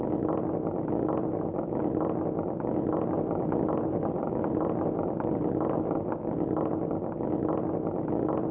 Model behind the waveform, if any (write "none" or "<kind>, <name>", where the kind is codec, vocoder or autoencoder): none